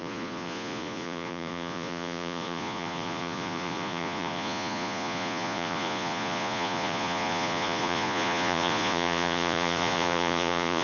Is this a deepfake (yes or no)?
yes